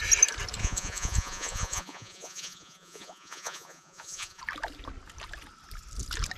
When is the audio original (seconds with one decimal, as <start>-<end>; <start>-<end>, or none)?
0.0-0.6; 4.4-6.4